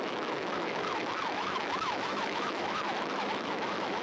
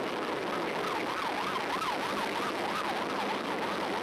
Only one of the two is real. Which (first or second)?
second